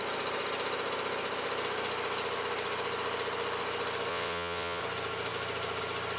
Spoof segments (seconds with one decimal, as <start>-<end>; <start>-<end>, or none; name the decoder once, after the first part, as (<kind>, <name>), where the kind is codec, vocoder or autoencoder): 4.1-4.8 (vocoder, WaveNeXt)